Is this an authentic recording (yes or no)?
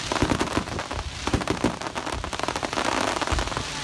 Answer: yes